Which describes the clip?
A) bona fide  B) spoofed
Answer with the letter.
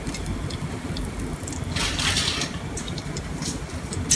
B